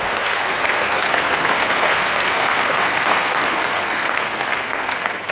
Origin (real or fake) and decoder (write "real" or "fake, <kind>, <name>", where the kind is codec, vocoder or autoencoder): fake, codec, SNAC